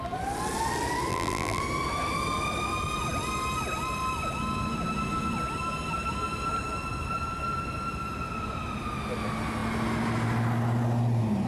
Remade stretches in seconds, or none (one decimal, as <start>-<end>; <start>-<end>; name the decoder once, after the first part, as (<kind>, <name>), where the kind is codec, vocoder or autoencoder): 1.1-1.6 (vocoder, BigVGAN v2)